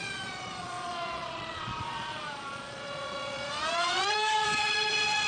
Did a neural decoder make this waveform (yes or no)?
yes